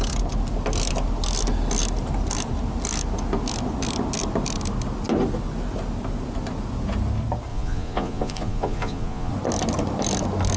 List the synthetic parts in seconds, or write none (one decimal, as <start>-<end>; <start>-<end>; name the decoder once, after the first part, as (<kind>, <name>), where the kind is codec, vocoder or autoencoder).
7.5-9.3 (vocoder, Vocos)